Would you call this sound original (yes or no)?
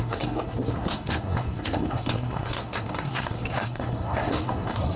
no